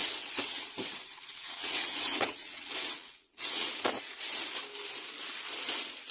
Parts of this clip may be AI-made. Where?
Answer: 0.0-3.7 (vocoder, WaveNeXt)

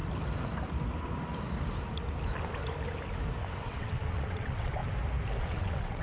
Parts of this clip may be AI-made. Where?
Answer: 3.6-4.8 (vocoder, WaveNeXt); 5.4-6.0

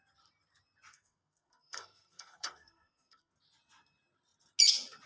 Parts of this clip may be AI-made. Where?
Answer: 0.9-3.3 (codec, SNAC)

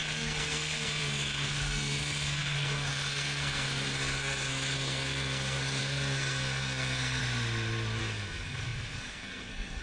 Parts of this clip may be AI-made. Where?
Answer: 0.0-7.2 (codec, SNAC); 8.0-9.8